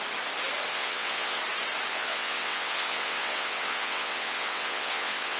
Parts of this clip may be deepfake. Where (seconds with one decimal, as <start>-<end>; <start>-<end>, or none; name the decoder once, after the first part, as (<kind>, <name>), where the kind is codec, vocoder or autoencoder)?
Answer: 0.7-1.4 (vocoder, WaveNeXt); 1.9-5.4